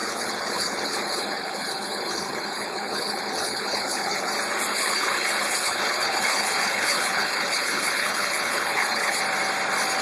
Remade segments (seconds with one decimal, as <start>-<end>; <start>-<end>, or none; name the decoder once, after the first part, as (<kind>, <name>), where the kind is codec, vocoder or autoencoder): 0.0-4.3 (codec, HILCodec); 4.7-9.2